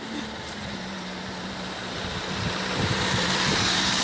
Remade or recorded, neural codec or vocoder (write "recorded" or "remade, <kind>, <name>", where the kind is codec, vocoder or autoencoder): remade, vocoder, BigVGAN v2